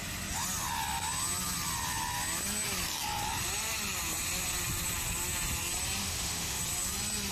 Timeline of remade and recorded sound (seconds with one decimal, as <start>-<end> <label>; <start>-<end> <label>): 0.0-6.0 recorded; 6.0-6.6 remade; 6.6-7.3 recorded